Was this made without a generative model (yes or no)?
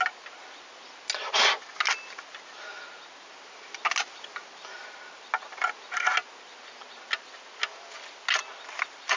yes